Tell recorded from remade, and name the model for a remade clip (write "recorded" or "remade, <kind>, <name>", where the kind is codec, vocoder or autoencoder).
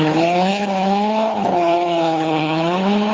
remade, codec, HILCodec